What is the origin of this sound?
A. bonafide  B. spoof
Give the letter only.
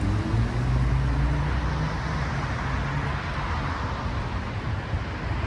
A